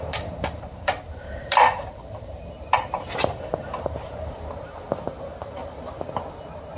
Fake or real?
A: fake